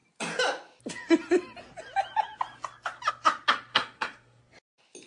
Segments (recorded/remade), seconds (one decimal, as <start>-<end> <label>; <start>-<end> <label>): 0.0-3.7 recorded; 3.7-4.4 remade; 4.4-5.1 recorded